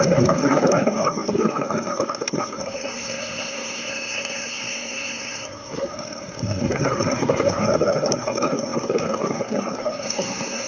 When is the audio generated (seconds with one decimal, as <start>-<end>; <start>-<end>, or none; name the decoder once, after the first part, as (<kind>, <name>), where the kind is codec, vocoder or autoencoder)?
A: 0.0-10.7 (codec, SNAC)